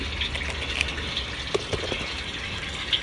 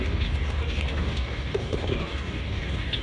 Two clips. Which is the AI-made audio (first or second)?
second